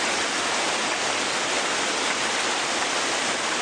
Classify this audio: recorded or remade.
recorded